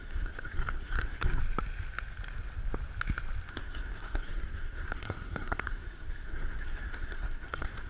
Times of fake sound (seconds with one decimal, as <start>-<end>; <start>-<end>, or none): 0.0-1.4; 3.5-7.9